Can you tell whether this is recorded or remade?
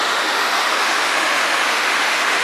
remade